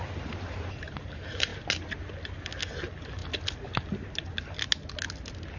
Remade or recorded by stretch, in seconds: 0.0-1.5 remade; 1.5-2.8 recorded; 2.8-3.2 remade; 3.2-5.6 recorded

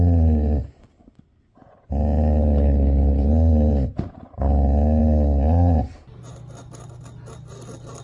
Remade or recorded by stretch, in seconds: 0.0-2.4 recorded; 2.4-3.3 remade; 3.3-8.0 recorded

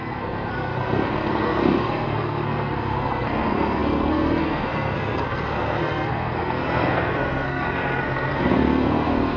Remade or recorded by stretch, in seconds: 0.0-9.4 remade

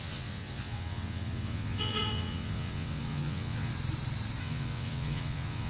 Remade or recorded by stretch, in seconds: 0.0-3.7 remade; 3.7-4.4 recorded; 4.4-5.7 remade

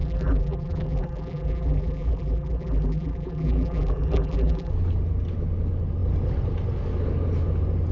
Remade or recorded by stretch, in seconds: 0.0-4.7 remade; 4.7-7.9 recorded

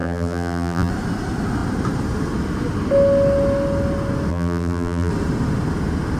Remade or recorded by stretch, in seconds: 0.0-0.9 remade; 0.9-4.3 recorded; 4.3-5.1 remade; 5.1-6.2 recorded